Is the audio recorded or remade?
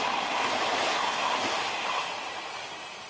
recorded